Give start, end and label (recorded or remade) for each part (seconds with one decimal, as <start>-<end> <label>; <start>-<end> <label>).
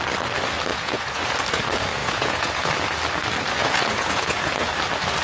0.0-0.7 recorded; 0.7-1.2 remade; 1.2-2.0 recorded; 2.0-2.7 remade; 2.7-3.6 recorded; 3.6-4.7 remade; 4.7-5.2 recorded